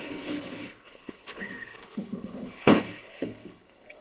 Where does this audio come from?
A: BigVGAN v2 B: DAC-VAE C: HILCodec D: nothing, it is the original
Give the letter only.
C